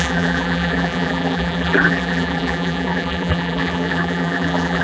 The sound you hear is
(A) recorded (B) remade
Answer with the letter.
B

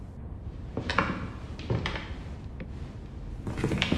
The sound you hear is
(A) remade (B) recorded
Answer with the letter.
A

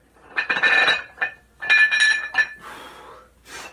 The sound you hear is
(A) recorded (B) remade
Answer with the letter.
A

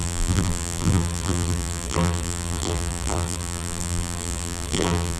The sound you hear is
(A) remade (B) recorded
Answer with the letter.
A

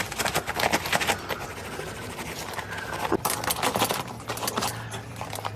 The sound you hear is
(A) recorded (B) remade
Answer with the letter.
A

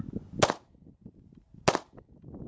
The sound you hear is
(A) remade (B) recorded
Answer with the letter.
B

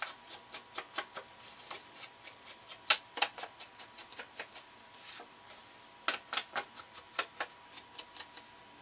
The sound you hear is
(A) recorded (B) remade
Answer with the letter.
A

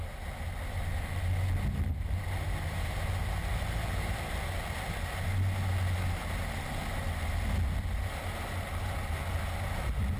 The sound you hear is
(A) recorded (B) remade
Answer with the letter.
A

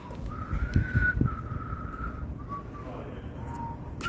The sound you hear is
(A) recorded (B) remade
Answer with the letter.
A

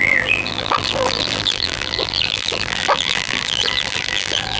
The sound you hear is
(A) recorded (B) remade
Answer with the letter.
B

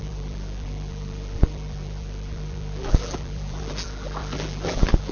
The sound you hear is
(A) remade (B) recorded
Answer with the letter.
A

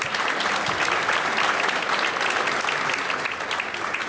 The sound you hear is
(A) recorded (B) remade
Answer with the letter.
A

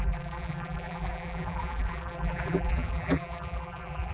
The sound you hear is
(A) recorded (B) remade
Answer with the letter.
B